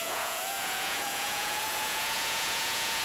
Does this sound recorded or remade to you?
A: remade